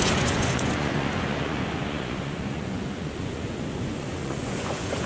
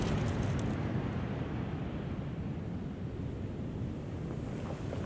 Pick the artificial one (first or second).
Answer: first